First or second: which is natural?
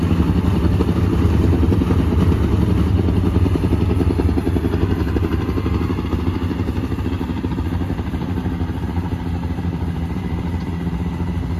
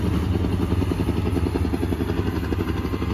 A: second